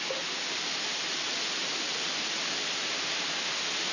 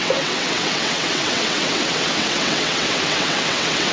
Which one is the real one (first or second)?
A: first